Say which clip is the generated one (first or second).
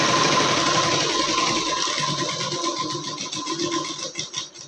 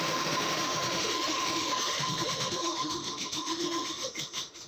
second